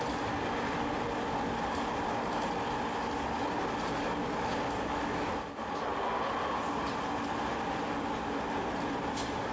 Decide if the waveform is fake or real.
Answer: real